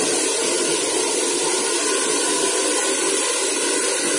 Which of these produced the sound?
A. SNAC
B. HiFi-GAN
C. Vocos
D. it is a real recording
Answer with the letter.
D